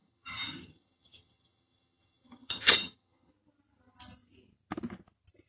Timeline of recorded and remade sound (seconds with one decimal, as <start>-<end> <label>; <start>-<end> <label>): 0.0-3.3 remade; 3.3-5.5 recorded